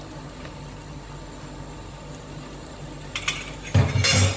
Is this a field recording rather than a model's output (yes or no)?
yes